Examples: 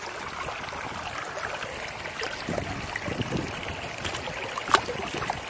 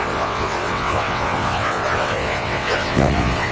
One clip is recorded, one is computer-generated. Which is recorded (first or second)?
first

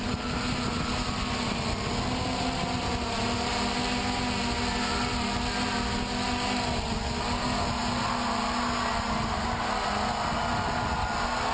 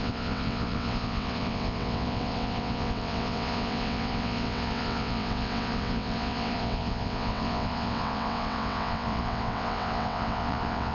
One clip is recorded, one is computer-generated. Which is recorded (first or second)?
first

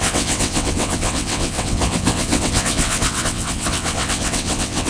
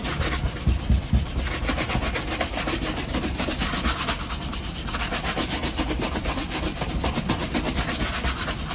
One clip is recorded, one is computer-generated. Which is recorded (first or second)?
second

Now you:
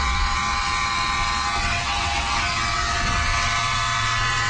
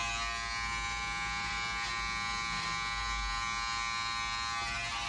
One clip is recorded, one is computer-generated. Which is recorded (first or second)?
second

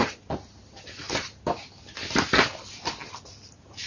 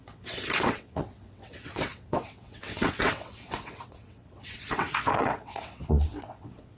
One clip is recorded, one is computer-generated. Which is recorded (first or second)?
first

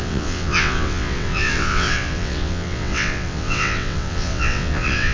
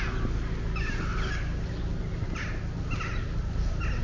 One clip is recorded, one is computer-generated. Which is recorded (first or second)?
second